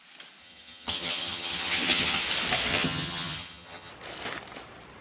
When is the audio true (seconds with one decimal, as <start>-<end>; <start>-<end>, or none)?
0.0-0.4; 2.2-2.7; 3.9-5.0